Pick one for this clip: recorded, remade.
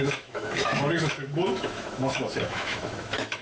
remade